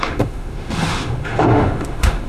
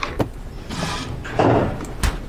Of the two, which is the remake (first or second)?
first